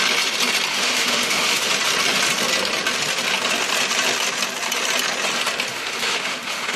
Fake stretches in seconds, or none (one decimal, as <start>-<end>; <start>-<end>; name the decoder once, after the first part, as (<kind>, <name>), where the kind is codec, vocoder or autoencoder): 0.7-1.7 (autoencoder, DAC-VAE); 5.7-6.8